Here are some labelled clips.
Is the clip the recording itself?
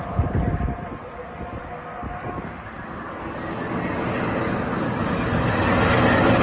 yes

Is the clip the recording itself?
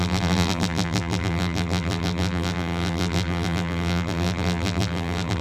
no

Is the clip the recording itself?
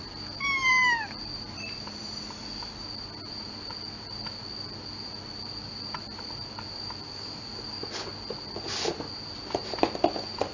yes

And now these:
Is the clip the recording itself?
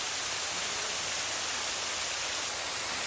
yes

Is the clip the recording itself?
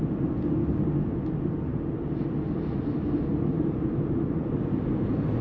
yes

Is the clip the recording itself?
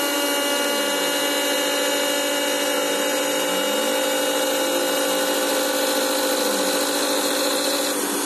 yes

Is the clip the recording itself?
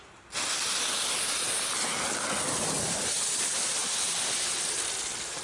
yes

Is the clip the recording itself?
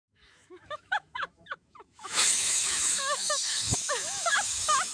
no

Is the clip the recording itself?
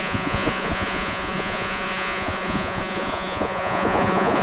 no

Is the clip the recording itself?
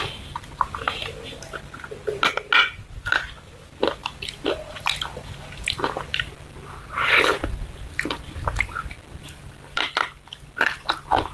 yes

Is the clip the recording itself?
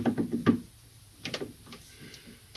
yes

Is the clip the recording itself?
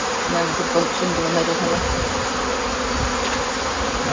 yes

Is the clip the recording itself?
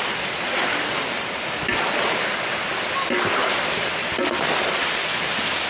yes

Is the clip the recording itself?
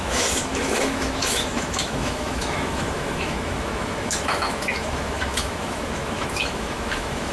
no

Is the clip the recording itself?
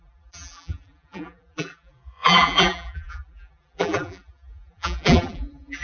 no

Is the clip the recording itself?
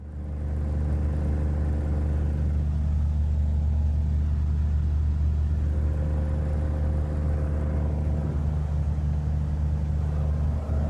yes